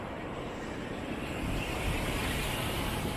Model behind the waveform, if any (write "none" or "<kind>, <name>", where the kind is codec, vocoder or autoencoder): vocoder, BigVGAN v2